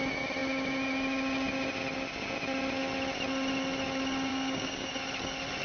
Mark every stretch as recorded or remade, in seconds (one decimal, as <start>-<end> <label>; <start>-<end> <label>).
0.0-4.3 recorded; 4.3-4.9 remade; 4.9-5.6 recorded